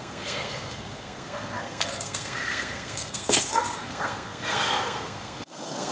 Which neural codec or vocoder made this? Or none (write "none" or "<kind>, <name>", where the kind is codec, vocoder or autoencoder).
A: codec, SNAC